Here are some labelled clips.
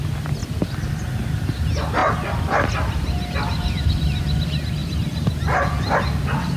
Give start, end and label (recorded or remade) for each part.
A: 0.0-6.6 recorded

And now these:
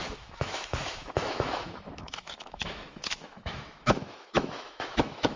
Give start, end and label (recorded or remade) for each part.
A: 0.0-5.4 remade

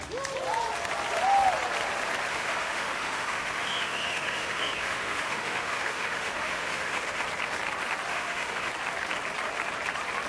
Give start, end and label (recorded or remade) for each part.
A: 0.0-2.3 recorded; 2.3-7.2 remade; 7.2-8.1 recorded; 8.1-8.7 remade; 8.7-10.3 recorded

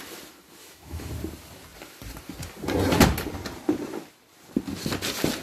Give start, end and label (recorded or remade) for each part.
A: 0.0-0.6 recorded; 0.6-1.1 remade; 1.1-5.4 recorded